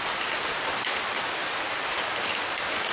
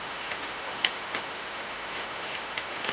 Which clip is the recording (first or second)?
first